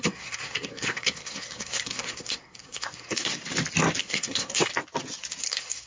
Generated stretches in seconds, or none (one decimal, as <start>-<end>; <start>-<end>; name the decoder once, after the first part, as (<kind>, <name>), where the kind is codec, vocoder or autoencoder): 0.0-3.4 (codec, SNAC); 4.0-4.7; 5.4-5.9